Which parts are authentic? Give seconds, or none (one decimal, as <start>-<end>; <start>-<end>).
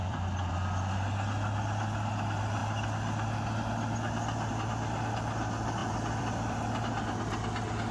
0.5-5.8; 6.9-7.9